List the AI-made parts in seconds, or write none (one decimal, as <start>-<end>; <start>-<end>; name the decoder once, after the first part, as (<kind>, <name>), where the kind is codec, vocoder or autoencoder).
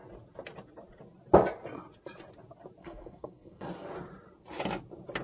2.8-3.7 (codec, SNAC)